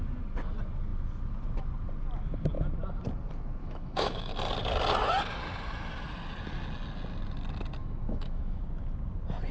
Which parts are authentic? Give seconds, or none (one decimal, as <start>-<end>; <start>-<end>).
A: 0.0-3.6; 4.3-7.8; 8.6-9.5